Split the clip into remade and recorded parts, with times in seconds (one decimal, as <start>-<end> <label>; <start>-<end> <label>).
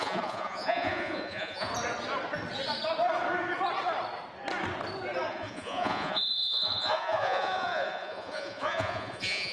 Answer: 0.0-1.7 remade; 1.7-5.3 recorded; 5.3-9.5 remade